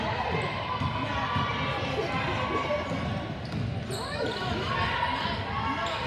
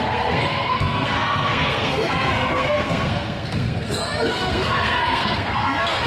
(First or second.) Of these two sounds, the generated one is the second